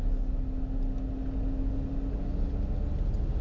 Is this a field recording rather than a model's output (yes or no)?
yes